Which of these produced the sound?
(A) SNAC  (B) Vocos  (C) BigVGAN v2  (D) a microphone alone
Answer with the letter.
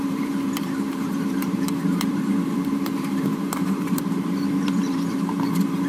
C